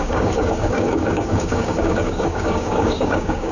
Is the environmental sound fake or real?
fake